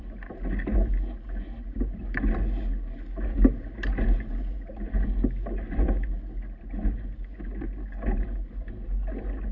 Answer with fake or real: real